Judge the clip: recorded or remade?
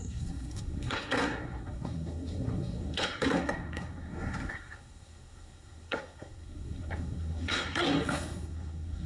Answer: remade